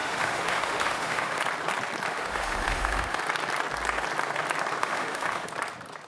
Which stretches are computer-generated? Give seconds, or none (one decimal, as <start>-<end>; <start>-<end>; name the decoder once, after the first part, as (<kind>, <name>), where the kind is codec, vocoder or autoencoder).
0.0-1.4 (autoencoder, DAC-VAE); 2.1-3.2; 4.8-5.5